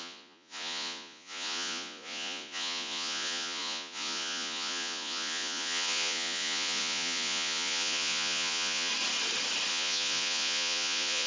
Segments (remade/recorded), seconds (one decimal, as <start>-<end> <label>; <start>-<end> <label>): 0.0-8.9 remade; 8.9-9.7 recorded; 9.7-11.3 remade